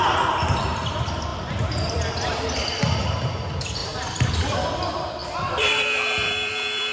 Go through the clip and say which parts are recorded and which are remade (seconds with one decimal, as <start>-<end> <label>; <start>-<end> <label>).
0.0-1.3 remade; 1.3-1.9 recorded; 1.9-6.9 remade